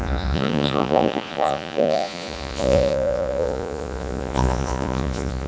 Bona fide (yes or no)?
no